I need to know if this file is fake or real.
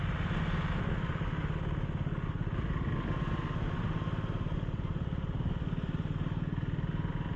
real